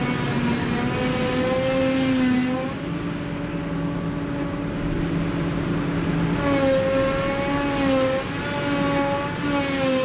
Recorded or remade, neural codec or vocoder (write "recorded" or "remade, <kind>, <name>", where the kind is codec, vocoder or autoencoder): recorded